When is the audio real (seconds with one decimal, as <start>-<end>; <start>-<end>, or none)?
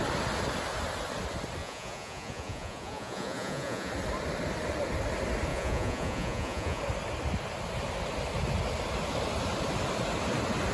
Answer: 0.0-1.6; 3.9-5.5; 6.8-10.7